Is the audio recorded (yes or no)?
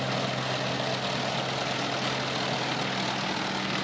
yes